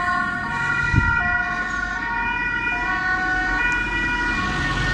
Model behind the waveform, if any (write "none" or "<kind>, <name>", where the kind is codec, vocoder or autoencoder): none